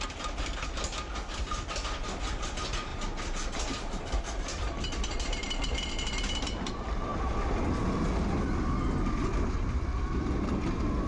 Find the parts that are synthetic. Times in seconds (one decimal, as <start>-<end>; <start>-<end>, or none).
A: 2.9-5.9